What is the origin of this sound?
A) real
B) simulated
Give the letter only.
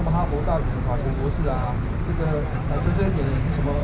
A